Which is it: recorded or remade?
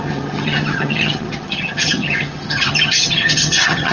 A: remade